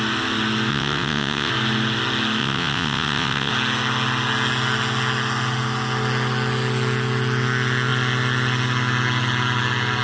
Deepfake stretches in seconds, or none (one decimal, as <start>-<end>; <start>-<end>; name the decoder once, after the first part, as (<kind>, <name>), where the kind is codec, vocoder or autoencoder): 0.7-1.5 (vocoder, WaveNeXt); 2.4-3.5